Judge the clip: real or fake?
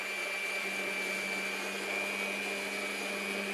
real